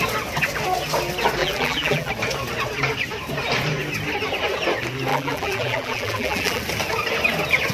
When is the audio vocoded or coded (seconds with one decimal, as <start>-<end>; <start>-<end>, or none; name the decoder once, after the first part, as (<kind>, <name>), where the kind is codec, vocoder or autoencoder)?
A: 1.4-2.1 (vocoder, BigVGAN v2); 5.1-6.6

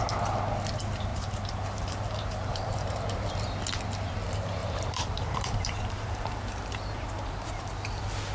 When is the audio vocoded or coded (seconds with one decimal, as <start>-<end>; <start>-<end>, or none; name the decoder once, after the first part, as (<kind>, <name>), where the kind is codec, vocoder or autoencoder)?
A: 1.1-3.3 (vocoder, BigVGAN v2); 4.6-7.7

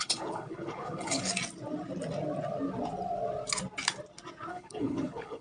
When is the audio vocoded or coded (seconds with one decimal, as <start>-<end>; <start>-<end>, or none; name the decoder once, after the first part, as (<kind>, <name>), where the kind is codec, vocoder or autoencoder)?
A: 0.0-1.3 (codec, HILCodec); 4.5-5.4

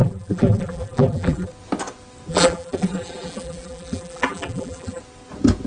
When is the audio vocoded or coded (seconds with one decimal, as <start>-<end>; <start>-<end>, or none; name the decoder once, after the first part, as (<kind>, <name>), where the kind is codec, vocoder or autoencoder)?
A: 0.0-1.5 (vocoder, BigVGAN v2); 2.3-5.0

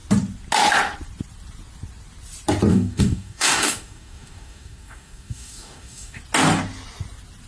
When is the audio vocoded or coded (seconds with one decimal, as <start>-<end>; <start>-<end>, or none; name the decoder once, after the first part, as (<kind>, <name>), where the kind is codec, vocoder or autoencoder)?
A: 2.7-6.2 (codec, DAC)

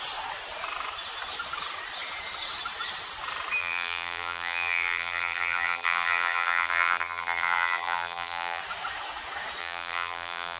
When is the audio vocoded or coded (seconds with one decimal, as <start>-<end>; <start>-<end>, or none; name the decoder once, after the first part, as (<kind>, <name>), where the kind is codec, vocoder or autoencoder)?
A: 3.6-8.6 (vocoder, BigVGAN v2); 9.6-10.6

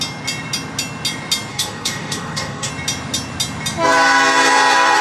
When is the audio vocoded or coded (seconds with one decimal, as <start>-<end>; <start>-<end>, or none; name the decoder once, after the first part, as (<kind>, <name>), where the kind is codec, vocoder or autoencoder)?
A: 1.5-2.7 (codec, DAC)

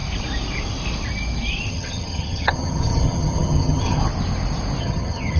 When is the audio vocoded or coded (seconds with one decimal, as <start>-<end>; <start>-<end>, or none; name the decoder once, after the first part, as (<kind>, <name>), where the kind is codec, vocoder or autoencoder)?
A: 1.7-4.0 (vocoder, HiFi-GAN); 4.8-5.4